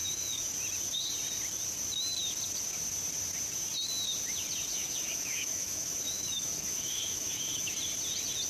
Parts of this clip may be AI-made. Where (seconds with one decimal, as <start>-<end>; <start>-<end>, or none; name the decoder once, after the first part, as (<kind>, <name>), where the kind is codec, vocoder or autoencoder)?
0.0-0.5 (autoencoder, DAC-VAE); 4.7-7.7